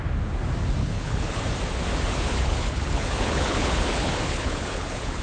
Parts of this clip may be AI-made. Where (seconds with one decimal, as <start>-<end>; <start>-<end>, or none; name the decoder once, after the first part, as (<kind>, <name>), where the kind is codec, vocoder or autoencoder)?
0.8-1.4 (codec, HILCodec); 2.1-5.2